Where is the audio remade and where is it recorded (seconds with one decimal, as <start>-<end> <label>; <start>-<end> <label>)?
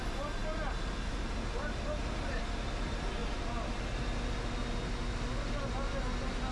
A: 0.0-6.5 recorded